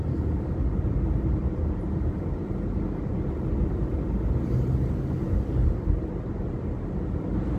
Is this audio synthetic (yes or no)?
no